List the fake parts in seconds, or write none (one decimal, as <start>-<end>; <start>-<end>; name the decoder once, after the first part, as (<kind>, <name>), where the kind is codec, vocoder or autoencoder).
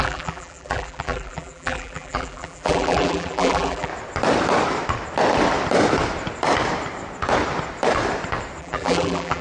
0.0-3.9 (vocoder, BigVGAN v2); 8.6-9.4